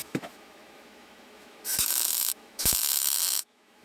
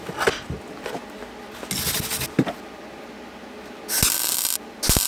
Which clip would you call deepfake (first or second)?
first